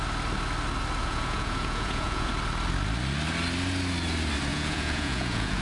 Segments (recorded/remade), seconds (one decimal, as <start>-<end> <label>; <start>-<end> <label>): 0.0-1.0 recorded; 1.0-2.3 remade; 2.3-4.5 recorded; 4.5-5.6 remade